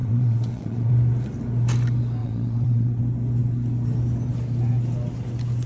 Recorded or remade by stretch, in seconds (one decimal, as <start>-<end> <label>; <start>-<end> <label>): 0.0-0.9 remade; 0.9-2.2 recorded; 2.2-3.0 remade; 3.0-5.7 recorded